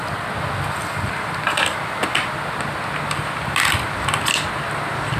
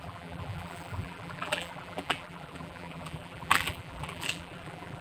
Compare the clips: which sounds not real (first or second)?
second